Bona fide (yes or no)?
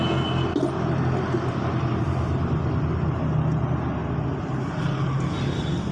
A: yes